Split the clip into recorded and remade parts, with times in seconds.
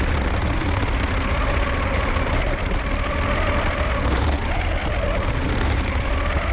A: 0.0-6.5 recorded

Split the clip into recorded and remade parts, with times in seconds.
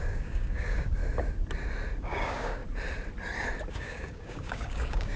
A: 0.0-1.0 remade; 1.0-2.0 recorded; 2.0-2.6 remade; 2.6-3.7 recorded; 3.7-5.2 remade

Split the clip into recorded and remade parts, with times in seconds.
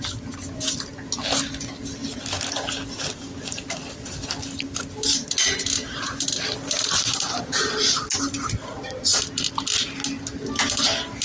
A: 0.0-11.2 recorded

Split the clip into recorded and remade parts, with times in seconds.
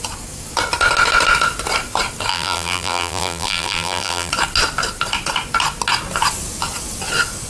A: 0.0-2.3 recorded; 2.3-4.3 remade; 4.3-7.5 recorded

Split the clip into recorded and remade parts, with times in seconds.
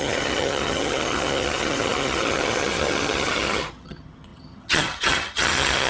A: 0.0-5.9 remade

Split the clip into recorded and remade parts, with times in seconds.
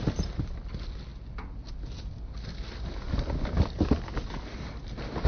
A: 0.0-5.3 recorded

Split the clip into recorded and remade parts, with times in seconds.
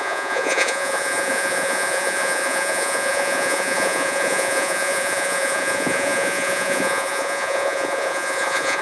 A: 0.0-8.8 remade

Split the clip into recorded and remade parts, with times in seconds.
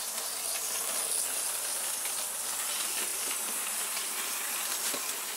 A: 0.0-3.1 recorded; 3.1-4.3 remade; 4.3-5.4 recorded